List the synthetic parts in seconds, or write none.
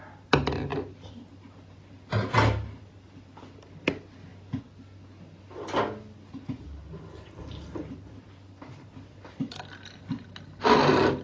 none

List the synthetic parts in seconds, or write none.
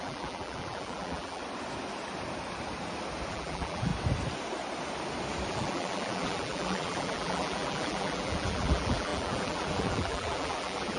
0.0-1.4 (vocoder, BigVGAN v2); 3.3-3.9; 5.5-11.0